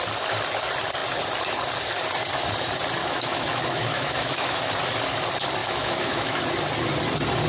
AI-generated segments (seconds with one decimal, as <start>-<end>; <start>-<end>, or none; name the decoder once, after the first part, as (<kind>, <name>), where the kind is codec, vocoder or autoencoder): 3.0-4.7 (autoencoder, DAC-VAE); 5.6-6.4